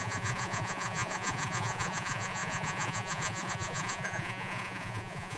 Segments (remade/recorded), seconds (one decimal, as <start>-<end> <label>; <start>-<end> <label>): 0.0-5.4 remade